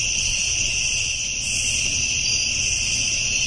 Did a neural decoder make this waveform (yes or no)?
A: no